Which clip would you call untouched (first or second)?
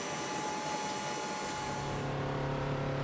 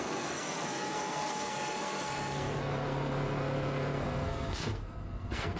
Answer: first